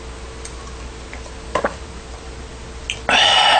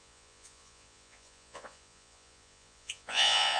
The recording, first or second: first